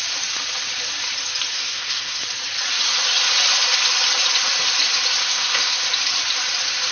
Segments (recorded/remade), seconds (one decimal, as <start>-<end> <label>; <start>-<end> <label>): 0.0-1.5 recorded; 1.5-2.2 remade; 2.2-5.2 recorded; 5.2-5.8 remade; 5.8-6.9 recorded